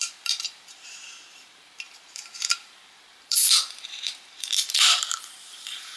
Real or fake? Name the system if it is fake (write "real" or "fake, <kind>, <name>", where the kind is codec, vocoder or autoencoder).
fake, vocoder, BigVGAN v2